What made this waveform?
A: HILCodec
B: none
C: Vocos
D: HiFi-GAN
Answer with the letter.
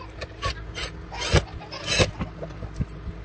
B